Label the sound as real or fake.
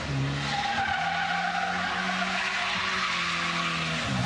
real